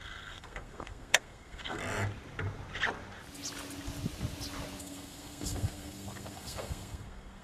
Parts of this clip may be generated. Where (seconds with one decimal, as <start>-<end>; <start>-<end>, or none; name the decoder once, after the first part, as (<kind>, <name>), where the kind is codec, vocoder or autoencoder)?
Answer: 0.0-1.8 (codec, SNAC); 4.8-7.4